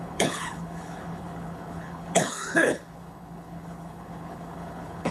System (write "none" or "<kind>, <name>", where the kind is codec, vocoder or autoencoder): codec, HILCodec